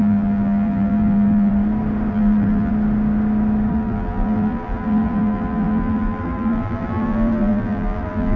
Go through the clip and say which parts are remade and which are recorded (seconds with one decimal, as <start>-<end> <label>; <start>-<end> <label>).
0.0-1.5 remade; 1.5-2.1 recorded; 2.1-2.7 remade; 2.7-3.7 recorded; 3.7-8.4 remade